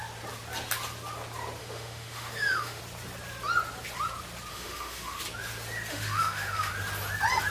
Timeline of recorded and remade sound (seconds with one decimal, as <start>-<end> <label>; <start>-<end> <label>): 0.0-1.6 recorded; 1.6-2.8 remade; 2.8-4.5 recorded; 4.5-5.2 remade; 5.2-5.9 recorded; 5.9-6.7 remade; 6.7-7.5 recorded